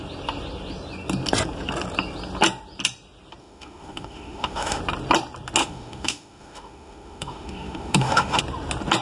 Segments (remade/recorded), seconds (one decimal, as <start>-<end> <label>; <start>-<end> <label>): 0.0-3.4 recorded; 3.4-4.8 remade; 4.8-5.6 recorded; 5.6-8.4 remade; 8.4-9.0 recorded